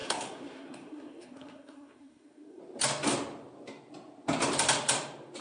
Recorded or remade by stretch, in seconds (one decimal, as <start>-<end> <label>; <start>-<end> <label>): 0.0-2.6 remade; 2.6-5.4 recorded